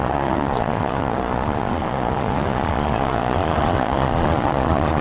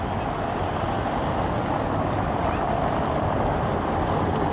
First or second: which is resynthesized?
first